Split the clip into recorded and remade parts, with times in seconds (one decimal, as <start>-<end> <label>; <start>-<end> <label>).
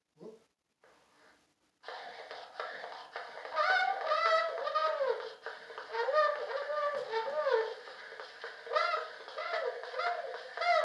0.0-10.8 recorded